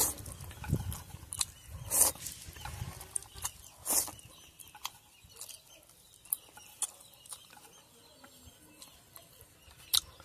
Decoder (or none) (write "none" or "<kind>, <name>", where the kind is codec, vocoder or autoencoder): none